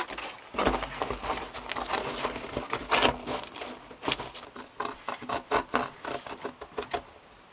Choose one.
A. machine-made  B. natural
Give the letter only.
B